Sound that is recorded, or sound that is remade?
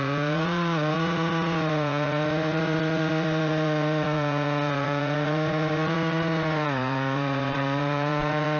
remade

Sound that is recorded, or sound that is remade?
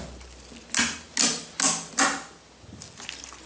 recorded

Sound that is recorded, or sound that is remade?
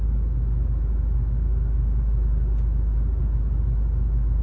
recorded